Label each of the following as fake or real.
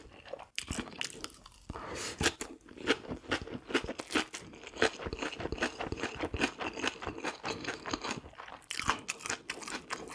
real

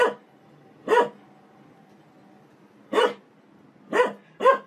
real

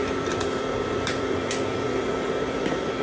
fake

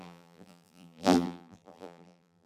fake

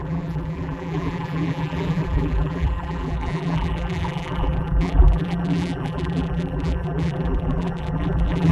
fake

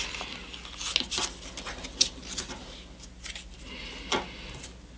real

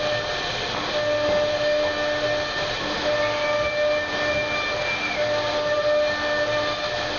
real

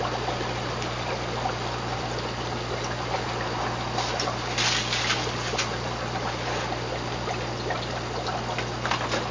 real